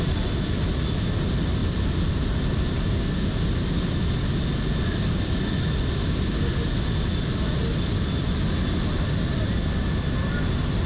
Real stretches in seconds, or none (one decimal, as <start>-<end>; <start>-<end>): 0.0-10.9